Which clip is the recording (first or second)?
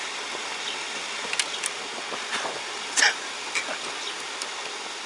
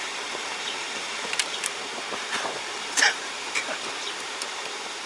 first